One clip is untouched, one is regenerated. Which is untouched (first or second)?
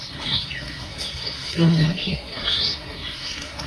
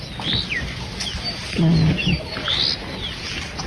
second